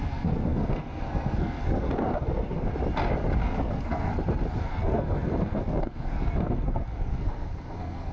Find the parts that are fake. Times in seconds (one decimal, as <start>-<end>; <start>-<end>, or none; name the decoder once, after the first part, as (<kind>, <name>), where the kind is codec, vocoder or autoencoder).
0.0-2.7 (codec, SNAC); 3.4-4.1; 4.6-8.1